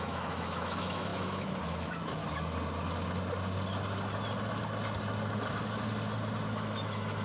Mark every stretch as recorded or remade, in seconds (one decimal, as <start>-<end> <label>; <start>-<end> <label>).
0.0-2.2 remade; 2.2-6.5 recorded; 6.5-7.2 remade